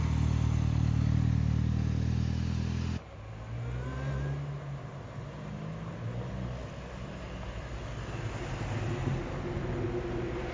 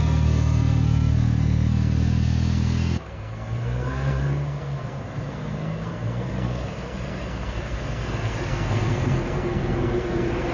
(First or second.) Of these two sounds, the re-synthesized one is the second